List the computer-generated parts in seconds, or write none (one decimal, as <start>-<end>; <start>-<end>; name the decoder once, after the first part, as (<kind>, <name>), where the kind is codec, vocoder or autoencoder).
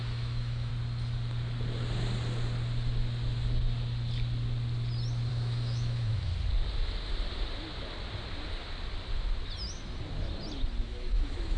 0.0-0.7 (autoencoder, DAC-VAE); 5.3-6.3; 10.8-11.6